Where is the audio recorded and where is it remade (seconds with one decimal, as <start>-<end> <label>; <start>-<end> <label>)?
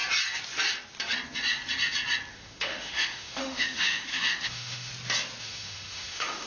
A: 0.0-2.3 recorded; 2.3-4.9 remade; 4.9-5.4 recorded; 5.4-6.5 remade